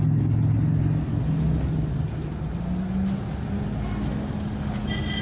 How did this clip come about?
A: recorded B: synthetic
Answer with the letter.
A